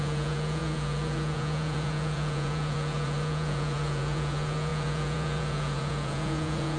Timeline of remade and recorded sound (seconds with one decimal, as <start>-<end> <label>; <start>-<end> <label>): 0.0-6.8 remade